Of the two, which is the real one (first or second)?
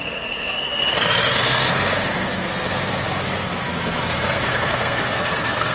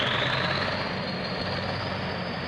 second